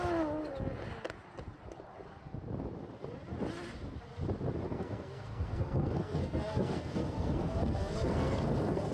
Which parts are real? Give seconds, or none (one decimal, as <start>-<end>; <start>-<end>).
0.0-4.7